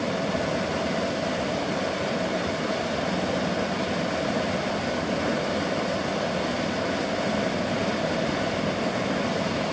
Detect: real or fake real